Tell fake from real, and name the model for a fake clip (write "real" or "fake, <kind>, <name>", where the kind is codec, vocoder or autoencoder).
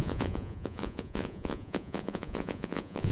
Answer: fake, vocoder, Vocos